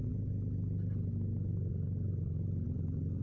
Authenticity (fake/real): real